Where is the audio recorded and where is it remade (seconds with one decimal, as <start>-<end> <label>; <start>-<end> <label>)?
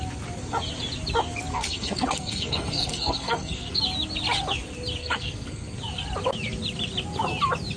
0.0-1.5 recorded; 1.5-3.8 remade; 3.8-5.0 recorded; 5.0-5.8 remade; 5.8-7.8 recorded